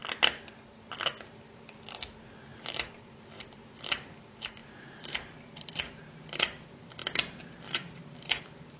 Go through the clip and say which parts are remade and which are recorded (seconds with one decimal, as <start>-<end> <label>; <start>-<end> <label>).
0.0-1.2 recorded; 1.2-8.8 remade